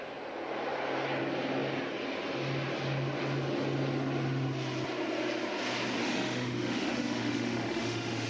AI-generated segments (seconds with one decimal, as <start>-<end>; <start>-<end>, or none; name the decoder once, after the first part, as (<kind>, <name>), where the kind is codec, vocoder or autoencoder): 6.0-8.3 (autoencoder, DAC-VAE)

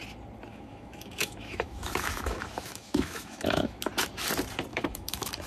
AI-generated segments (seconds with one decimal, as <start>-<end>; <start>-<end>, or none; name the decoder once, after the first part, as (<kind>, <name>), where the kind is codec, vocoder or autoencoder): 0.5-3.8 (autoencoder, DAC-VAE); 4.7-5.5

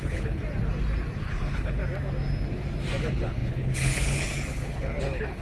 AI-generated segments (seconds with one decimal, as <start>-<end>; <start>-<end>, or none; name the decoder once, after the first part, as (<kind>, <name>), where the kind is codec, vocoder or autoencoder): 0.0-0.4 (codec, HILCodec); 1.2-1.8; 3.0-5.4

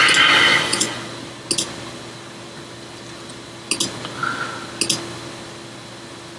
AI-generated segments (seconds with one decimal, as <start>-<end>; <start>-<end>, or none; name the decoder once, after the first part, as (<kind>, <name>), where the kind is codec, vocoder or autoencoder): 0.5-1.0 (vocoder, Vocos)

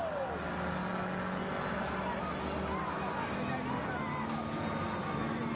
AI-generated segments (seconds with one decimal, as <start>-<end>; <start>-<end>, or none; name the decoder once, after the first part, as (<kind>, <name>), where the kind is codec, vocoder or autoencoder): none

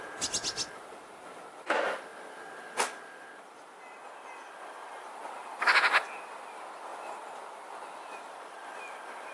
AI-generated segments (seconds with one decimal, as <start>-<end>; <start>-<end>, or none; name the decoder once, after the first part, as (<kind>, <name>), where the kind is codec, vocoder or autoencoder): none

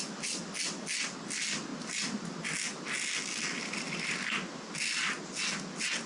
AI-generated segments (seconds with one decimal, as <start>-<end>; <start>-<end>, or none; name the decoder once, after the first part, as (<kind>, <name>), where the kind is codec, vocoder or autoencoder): none